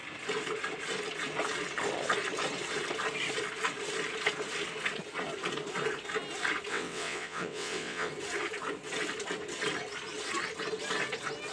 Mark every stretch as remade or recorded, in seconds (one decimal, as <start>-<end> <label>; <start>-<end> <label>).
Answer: 0.0-6.7 recorded; 6.7-8.1 remade; 8.1-11.5 recorded